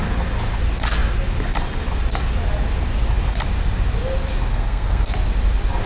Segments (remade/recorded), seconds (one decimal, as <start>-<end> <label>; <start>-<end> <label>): 0.0-4.5 recorded; 4.5-5.1 remade; 5.1-5.9 recorded